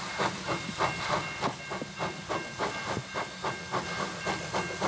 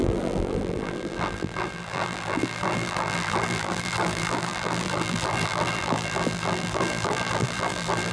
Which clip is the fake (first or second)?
second